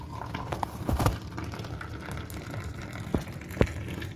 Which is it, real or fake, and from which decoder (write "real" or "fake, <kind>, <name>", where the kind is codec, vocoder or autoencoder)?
real